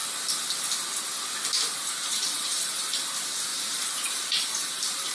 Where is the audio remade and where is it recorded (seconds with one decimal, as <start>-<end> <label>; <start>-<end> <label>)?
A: 0.0-2.0 recorded; 2.0-3.0 remade; 3.0-3.5 recorded; 3.5-5.1 remade